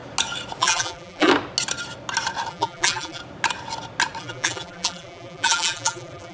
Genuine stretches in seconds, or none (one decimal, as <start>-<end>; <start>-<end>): 0.0-0.6; 1.3-2.5; 3.2-4.2